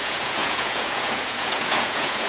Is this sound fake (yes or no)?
yes